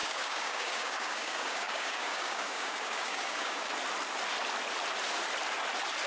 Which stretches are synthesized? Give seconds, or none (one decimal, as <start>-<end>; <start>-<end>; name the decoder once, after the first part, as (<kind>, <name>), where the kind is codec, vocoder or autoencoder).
0.0-3.7 (codec, DAC)